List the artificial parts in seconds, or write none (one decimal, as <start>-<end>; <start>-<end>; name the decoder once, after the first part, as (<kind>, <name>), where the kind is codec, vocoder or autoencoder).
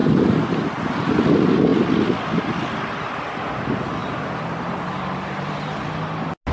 0.0-1.1 (vocoder, BigVGAN v2); 1.7-2.6; 4.0-4.8